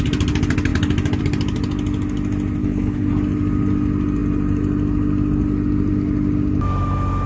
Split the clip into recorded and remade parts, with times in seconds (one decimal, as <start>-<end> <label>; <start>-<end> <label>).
0.0-2.6 recorded; 2.6-3.1 remade; 3.1-7.3 recorded